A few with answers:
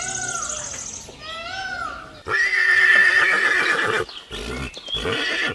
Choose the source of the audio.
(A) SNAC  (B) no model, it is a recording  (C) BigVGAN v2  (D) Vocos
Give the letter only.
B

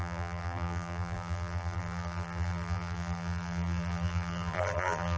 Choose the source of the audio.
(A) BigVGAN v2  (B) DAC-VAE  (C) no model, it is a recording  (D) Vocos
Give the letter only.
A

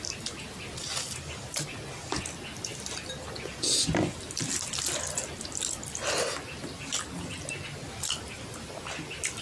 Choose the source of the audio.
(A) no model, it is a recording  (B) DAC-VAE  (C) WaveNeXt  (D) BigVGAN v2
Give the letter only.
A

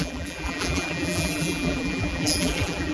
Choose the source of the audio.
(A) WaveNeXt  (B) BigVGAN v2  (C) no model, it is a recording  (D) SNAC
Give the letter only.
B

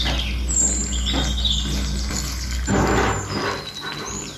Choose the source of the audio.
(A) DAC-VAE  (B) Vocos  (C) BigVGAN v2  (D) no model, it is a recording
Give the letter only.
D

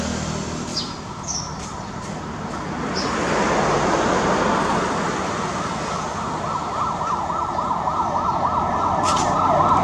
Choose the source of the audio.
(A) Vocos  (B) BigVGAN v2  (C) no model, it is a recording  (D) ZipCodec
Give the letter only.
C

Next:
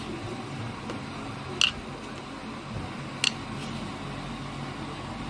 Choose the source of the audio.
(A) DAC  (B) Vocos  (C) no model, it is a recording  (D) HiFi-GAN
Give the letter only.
C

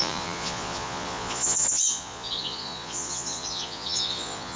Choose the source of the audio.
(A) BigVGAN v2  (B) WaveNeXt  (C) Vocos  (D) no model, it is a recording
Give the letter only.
C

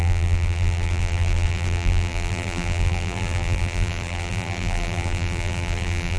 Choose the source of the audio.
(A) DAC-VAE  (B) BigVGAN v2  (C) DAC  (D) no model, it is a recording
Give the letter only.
B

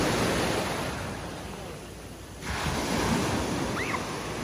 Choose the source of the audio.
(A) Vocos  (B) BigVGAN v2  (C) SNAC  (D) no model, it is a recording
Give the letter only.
D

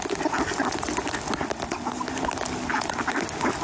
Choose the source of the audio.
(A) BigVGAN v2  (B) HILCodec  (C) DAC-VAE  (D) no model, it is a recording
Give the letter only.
D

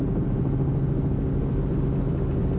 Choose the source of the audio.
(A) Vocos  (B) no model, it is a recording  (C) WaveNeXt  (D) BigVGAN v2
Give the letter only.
B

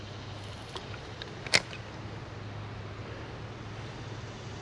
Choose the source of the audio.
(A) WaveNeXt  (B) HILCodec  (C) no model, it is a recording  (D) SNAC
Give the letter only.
C